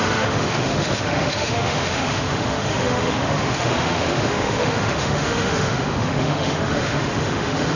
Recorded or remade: remade